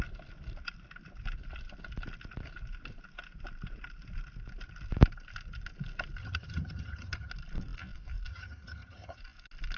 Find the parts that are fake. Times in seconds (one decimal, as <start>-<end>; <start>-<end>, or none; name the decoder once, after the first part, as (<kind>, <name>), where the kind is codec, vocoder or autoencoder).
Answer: 6.2-7.3 (vocoder, HiFi-GAN); 8.3-9.2